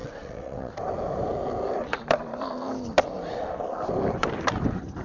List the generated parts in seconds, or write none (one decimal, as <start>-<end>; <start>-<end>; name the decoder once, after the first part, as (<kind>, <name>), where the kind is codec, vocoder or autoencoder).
0.0-0.7 (vocoder, WaveNeXt)